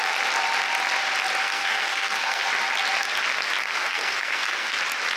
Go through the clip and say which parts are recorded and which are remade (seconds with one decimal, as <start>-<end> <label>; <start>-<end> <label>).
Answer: 0.0-1.4 recorded; 1.4-2.5 remade; 2.5-3.6 recorded; 3.6-4.8 remade; 4.8-5.2 recorded